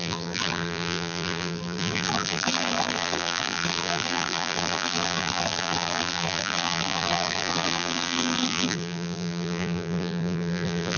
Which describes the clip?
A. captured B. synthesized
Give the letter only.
B